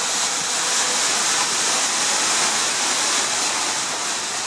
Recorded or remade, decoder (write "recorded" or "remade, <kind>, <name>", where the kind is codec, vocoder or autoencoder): recorded